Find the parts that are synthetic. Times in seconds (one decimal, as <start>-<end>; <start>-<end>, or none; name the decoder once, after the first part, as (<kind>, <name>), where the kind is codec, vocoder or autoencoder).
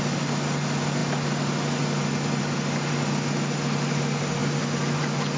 none